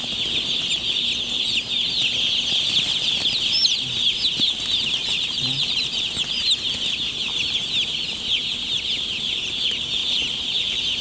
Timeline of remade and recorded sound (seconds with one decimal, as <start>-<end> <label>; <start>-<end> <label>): 0.0-5.0 recorded; 5.0-6.3 remade; 6.3-10.0 recorded; 10.0-11.0 remade